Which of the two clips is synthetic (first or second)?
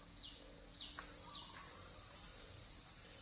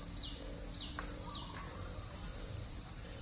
second